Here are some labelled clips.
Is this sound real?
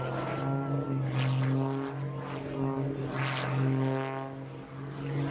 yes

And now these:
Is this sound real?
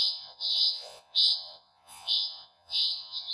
no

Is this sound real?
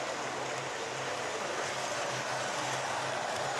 yes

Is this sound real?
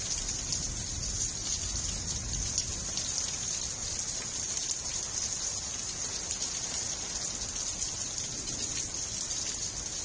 yes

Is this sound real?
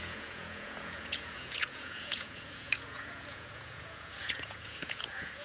no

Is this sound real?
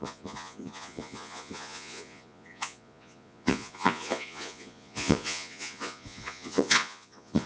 no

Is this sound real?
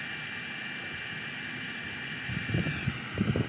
yes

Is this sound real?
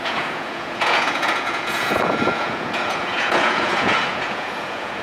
no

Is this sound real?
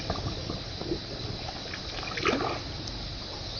yes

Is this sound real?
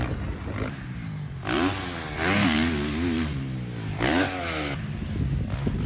yes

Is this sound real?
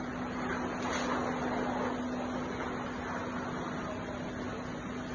yes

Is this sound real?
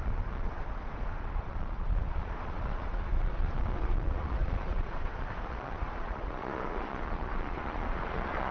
no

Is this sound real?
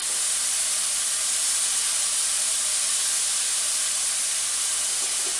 yes